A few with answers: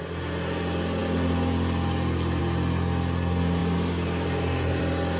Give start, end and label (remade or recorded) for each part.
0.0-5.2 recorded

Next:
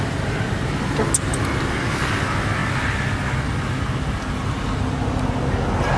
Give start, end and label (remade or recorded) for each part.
0.0-6.0 recorded

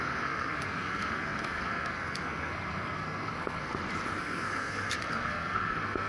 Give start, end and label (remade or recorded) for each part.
0.0-3.7 remade; 3.7-4.2 recorded; 4.2-6.1 remade

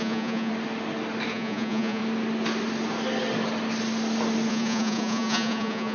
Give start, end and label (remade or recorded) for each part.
0.0-0.5 remade; 0.5-1.3 recorded; 1.3-2.0 remade; 2.0-4.5 recorded; 4.5-5.9 remade

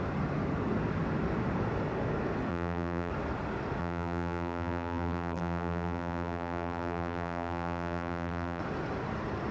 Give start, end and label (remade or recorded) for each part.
0.0-2.5 recorded; 2.5-3.1 remade; 3.1-3.8 recorded; 3.8-8.6 remade; 8.6-9.5 recorded

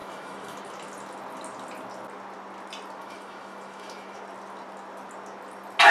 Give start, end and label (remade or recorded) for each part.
0.0-0.6 remade; 0.6-3.0 recorded; 3.0-4.2 remade; 4.2-5.9 recorded

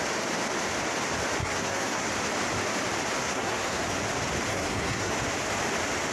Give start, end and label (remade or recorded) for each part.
0.0-1.4 recorded; 1.4-2.1 remade; 2.1-3.2 recorded; 3.2-3.8 remade; 3.8-4.5 recorded; 4.5-5.1 remade; 5.1-6.1 recorded